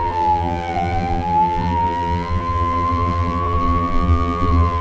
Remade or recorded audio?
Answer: remade